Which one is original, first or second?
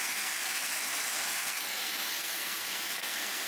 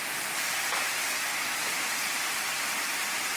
second